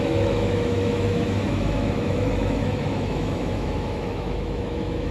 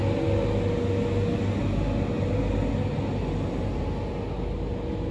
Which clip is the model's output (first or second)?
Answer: first